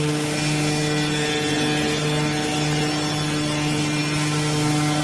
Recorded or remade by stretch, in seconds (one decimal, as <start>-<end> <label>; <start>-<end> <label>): 0.0-5.0 recorded